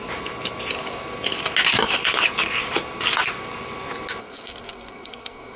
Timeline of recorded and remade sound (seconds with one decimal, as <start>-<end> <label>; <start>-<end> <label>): 0.0-4.2 recorded; 4.2-5.6 remade